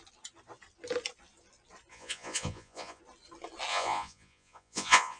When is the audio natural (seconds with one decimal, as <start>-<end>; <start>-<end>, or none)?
0.0-1.9; 3.0-3.7